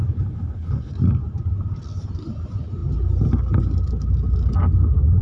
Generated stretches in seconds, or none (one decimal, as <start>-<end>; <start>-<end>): 0.0-0.9